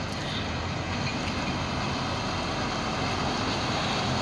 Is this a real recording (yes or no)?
yes